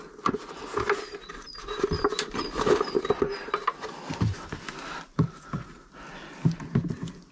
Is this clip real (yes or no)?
yes